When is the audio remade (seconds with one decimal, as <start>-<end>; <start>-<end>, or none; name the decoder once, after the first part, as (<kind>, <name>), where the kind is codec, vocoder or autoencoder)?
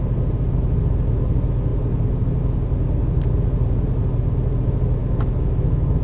5.0-6.0 (autoencoder, DAC-VAE)